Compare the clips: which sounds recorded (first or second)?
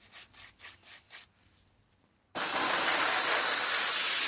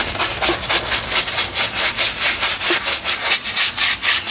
second